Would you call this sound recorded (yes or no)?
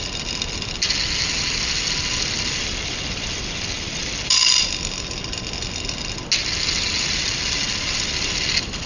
yes